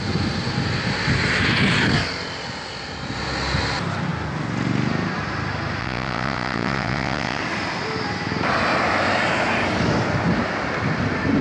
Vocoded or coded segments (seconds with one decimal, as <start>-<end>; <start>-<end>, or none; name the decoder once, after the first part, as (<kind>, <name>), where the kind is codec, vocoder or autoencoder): 5.8-7.4 (vocoder, WaveNeXt)